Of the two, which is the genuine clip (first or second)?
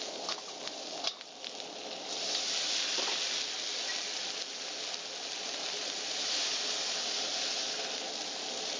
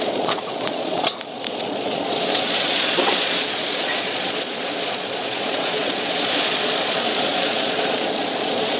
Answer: first